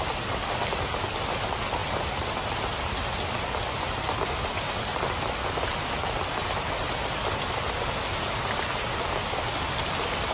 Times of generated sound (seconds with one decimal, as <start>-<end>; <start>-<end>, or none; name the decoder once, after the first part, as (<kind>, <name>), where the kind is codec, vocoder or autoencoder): none

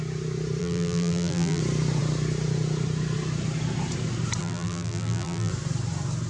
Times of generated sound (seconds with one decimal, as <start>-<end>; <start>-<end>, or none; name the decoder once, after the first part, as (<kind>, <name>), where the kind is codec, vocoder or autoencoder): 0.6-1.6 (vocoder, BigVGAN v2); 4.4-5.5